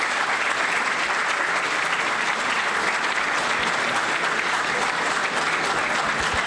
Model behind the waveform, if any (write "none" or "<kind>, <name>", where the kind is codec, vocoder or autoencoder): none